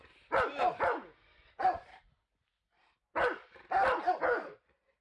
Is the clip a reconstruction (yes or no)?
yes